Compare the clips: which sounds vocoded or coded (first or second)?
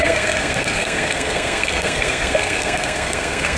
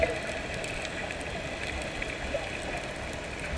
first